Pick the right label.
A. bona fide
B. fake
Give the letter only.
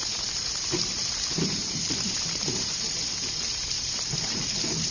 B